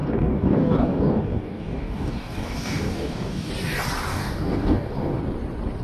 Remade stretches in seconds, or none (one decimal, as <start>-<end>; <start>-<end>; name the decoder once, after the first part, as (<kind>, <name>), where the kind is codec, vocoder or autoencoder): 0.0-3.5 (codec, DAC); 4.1-5.2